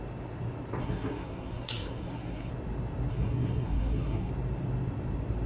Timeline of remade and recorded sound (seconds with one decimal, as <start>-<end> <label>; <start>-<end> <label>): 0.0-0.8 recorded; 0.8-2.5 remade; 2.5-3.1 recorded; 3.1-4.3 remade; 4.3-5.5 recorded